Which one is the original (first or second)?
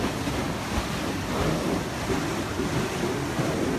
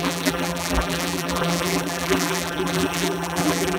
first